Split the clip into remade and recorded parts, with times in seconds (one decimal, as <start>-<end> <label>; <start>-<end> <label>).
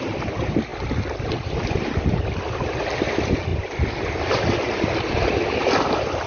0.0-6.3 recorded